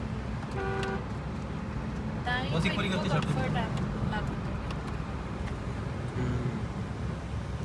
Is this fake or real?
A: real